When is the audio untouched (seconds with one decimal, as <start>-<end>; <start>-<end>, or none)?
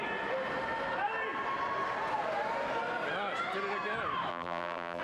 0.0-4.3